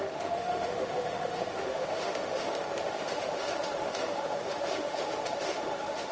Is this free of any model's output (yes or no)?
no